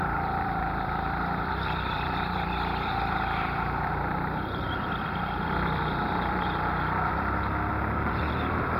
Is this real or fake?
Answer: fake